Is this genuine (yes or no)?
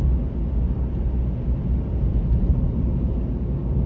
yes